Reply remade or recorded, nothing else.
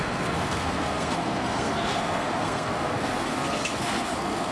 remade